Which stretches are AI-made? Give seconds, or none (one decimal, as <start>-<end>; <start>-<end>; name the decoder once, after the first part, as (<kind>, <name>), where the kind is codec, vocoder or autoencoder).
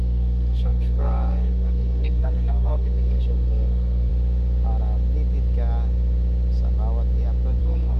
0.0-4.1 (codec, SNAC); 7.6-8.0